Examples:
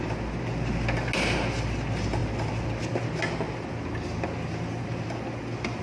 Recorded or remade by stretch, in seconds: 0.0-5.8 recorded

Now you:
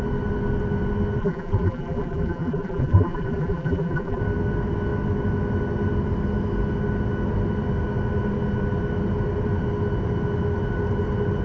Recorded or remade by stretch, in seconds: 0.0-1.2 recorded; 1.2-4.2 remade; 4.2-11.4 recorded

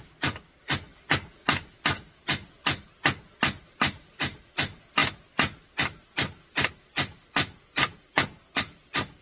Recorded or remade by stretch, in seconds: 0.0-9.2 recorded

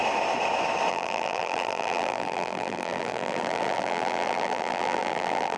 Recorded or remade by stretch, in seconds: 0.0-0.9 recorded; 0.9-5.6 remade

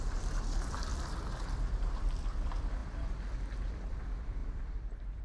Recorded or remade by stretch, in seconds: 0.0-5.2 remade

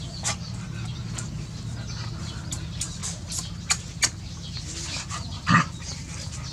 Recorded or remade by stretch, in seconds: 0.0-6.5 recorded